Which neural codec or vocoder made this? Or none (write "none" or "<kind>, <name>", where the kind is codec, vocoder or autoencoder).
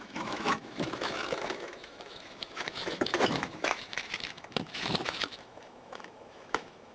autoencoder, DAC-VAE